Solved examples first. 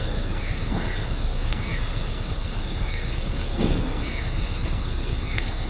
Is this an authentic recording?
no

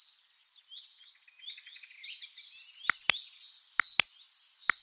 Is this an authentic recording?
yes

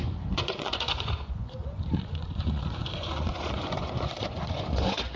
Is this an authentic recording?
no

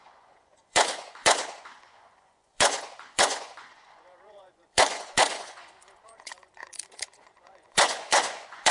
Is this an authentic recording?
no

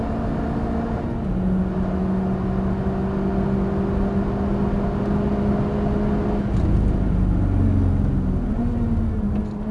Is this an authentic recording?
yes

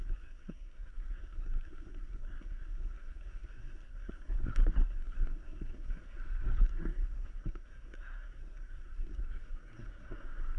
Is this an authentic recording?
no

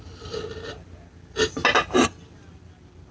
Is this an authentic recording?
yes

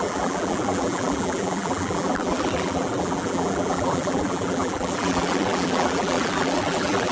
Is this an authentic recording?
no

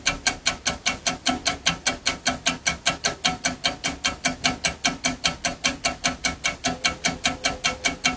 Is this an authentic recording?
yes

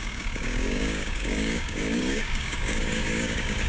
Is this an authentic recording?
no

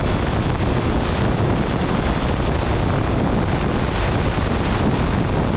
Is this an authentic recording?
yes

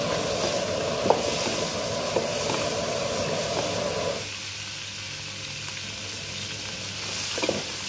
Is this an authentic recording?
yes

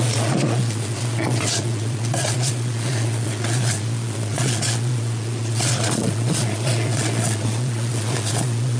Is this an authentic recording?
no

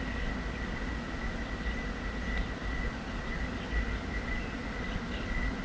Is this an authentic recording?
yes